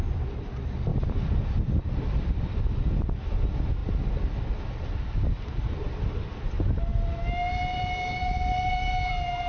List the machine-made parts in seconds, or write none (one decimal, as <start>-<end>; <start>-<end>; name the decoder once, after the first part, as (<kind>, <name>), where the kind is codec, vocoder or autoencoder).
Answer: none